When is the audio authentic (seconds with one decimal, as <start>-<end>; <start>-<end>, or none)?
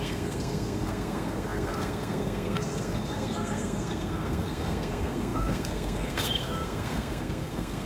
none